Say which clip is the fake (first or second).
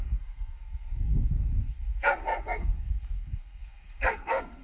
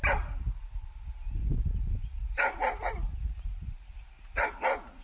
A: first